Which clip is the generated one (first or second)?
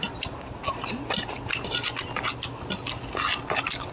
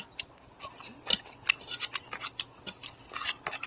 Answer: second